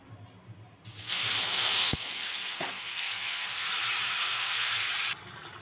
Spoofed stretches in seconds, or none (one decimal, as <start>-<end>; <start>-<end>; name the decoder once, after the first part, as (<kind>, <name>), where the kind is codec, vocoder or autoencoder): 1.0-3.7 (codec, SNAC); 4.2-4.9